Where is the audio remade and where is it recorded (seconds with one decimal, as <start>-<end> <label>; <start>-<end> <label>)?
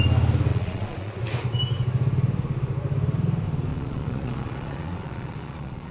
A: 0.0-0.5 recorded; 0.5-1.2 remade; 1.2-3.7 recorded; 3.7-5.9 remade